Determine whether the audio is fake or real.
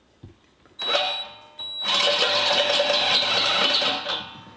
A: real